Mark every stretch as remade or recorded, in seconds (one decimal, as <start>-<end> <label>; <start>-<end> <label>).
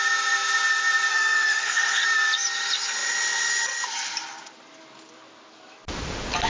0.0-1.1 recorded; 1.1-2.0 remade; 2.0-6.5 recorded